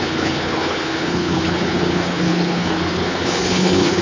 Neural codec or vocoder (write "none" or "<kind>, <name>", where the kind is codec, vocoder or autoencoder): codec, HILCodec